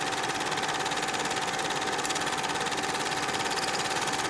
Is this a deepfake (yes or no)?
no